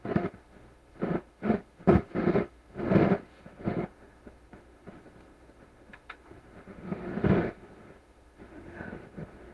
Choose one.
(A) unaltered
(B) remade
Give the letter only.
B